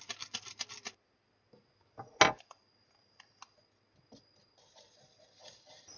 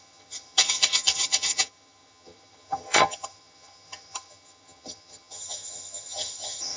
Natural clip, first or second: first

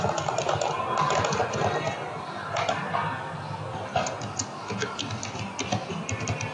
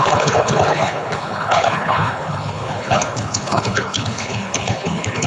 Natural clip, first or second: first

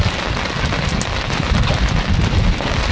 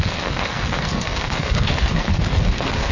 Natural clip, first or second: first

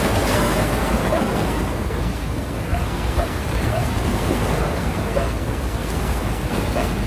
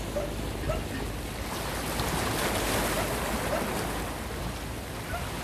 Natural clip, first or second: second